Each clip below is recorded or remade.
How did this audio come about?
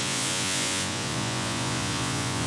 remade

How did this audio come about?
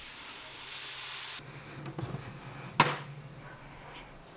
recorded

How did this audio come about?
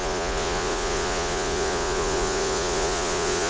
remade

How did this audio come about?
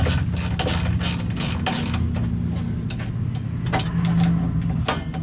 recorded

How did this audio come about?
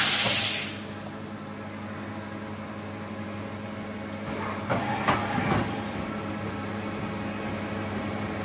recorded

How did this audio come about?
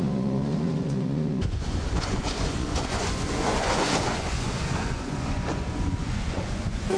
remade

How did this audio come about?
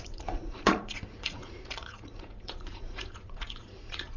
remade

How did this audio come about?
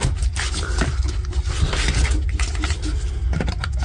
recorded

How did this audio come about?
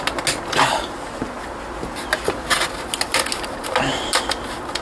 recorded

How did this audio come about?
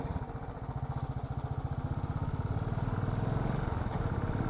recorded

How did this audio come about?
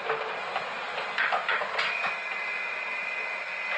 recorded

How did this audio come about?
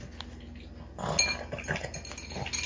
recorded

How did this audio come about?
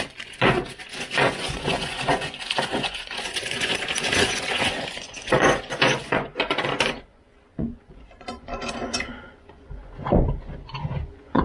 remade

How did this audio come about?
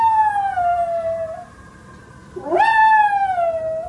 recorded